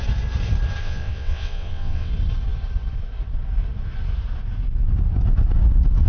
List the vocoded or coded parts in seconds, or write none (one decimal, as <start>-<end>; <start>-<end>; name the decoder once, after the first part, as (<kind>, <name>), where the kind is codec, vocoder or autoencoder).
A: 0.8-2.1 (vocoder, WaveNeXt)